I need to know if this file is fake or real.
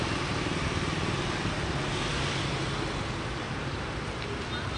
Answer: real